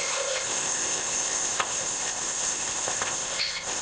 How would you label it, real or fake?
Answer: fake